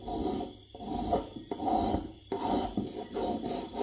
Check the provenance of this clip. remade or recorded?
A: recorded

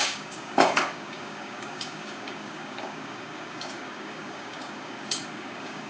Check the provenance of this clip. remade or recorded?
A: remade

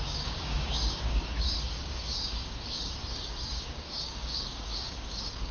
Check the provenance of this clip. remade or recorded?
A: remade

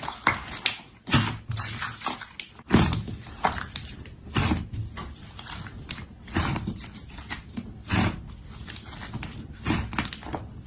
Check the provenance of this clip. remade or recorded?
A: recorded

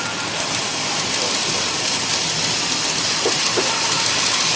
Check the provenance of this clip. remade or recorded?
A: recorded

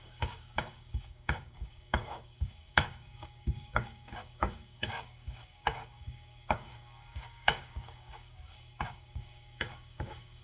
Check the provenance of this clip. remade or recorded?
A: remade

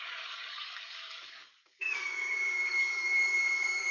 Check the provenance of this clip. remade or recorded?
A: remade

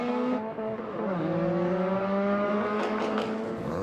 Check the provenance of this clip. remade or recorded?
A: remade